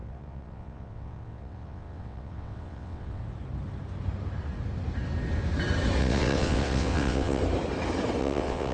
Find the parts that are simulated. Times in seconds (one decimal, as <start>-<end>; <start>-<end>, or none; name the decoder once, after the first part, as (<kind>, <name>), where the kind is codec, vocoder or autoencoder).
0.0-3.2 (vocoder, WaveNeXt); 6.0-7.4; 8.2-8.7